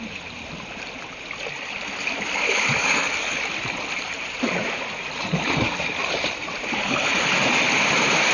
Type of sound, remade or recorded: remade